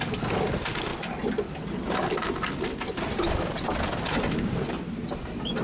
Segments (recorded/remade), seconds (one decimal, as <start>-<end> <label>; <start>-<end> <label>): 0.0-5.6 recorded